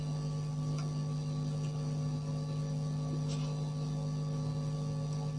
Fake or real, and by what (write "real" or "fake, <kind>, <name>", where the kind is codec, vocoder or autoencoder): real